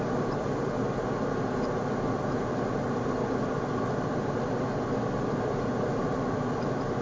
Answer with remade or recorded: recorded